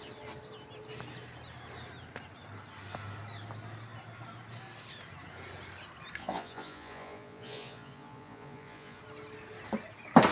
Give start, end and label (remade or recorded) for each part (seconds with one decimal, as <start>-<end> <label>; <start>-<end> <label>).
0.0-6.2 recorded; 6.2-9.0 remade; 9.0-10.3 recorded